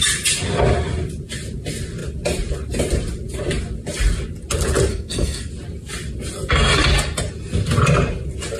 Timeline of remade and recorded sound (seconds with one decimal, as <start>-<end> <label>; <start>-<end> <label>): 0.0-4.9 recorded; 4.9-5.5 remade; 5.5-8.6 recorded